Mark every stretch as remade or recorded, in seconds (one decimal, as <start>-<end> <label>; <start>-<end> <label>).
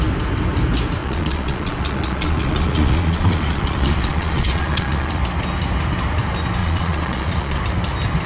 0.0-1.0 recorded; 1.0-5.2 remade; 5.2-6.6 recorded; 6.6-7.6 remade; 7.6-8.3 recorded